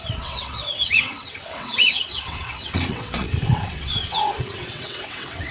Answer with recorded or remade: remade